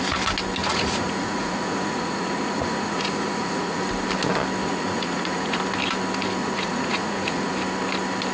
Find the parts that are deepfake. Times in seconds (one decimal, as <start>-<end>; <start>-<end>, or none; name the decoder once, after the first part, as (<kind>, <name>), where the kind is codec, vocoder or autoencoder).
0.6-3.9 (vocoder, Vocos); 4.6-5.6; 6.4-7.5